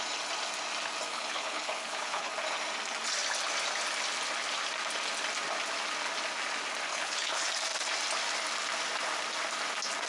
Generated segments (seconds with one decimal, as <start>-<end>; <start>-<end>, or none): 1.1-2.3; 6.9-7.5